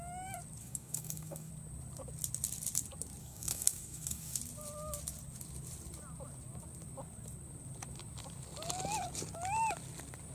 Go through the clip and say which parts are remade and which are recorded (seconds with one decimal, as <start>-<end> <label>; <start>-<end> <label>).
0.0-0.6 recorded; 0.6-1.5 remade; 1.5-3.2 recorded; 3.2-4.4 remade; 4.4-10.3 recorded